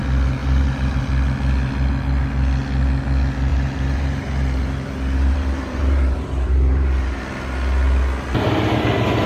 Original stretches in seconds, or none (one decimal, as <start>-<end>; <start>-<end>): 0.0-0.4; 1.0-3.5; 7.2-9.3